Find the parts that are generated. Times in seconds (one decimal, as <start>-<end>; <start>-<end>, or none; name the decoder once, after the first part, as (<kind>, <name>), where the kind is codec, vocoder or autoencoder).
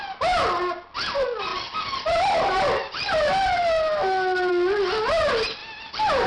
5.6-6.3 (vocoder, BigVGAN v2)